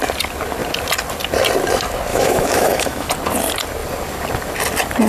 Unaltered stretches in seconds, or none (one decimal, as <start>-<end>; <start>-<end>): 0.0-2.1; 3.1-5.1